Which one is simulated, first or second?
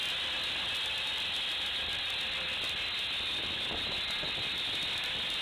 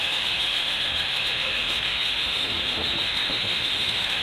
second